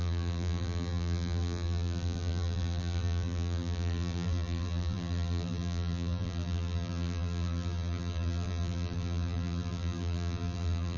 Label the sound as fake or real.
fake